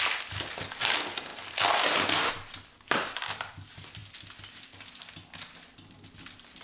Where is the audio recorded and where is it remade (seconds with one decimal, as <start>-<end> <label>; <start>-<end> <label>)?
0.0-6.6 recorded